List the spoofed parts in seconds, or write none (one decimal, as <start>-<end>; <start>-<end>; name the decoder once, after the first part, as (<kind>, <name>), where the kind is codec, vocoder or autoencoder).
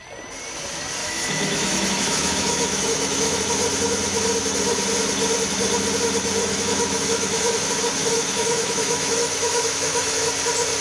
1.0-3.4 (autoencoder, DAC-VAE); 6.4-7.6; 8.0-10.3